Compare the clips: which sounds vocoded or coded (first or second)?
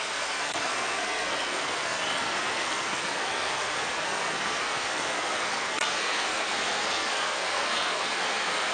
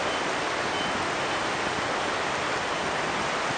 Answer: first